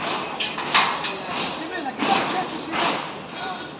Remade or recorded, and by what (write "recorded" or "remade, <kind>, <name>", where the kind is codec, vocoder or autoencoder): recorded